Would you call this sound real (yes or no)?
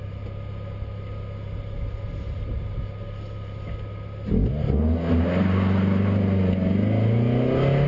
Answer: yes